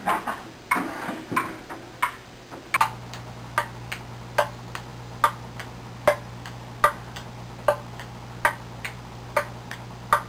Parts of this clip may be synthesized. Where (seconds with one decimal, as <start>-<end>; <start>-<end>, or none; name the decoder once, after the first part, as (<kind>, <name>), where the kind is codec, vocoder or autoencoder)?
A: none